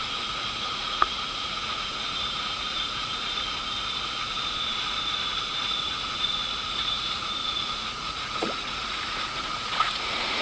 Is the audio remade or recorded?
remade